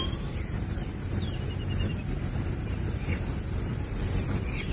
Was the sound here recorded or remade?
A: remade